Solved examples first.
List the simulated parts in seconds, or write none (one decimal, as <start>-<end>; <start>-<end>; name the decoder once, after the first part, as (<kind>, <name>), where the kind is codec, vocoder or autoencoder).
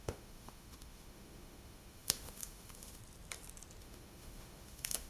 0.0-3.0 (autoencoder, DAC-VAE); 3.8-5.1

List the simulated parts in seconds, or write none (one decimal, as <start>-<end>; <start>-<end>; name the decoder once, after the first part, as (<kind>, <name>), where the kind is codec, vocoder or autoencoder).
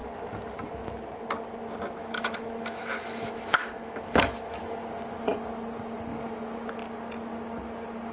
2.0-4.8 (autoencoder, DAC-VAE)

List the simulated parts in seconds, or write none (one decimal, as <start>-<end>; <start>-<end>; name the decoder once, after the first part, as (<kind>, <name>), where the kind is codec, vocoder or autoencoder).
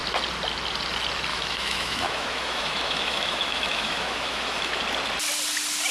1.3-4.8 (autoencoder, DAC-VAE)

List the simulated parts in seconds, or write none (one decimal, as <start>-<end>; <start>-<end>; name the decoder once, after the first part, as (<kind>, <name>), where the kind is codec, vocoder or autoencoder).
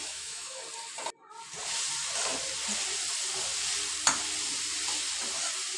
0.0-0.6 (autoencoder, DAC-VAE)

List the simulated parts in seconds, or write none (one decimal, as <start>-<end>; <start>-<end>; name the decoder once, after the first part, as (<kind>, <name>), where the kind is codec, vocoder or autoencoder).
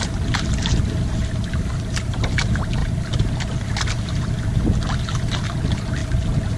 none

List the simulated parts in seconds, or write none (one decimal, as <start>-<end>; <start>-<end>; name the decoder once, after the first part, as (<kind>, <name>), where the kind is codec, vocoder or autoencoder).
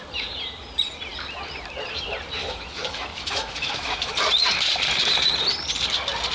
2.4-4.1 (autoencoder, DAC-VAE)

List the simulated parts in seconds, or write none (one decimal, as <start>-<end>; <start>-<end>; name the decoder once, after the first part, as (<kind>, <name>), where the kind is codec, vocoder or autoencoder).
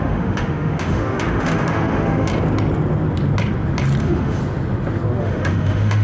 0.0-2.3 (autoencoder, DAC-VAE); 4.0-4.4; 5.2-6.0